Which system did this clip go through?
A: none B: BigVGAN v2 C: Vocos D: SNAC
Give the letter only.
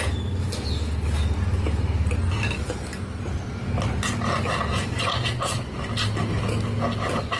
A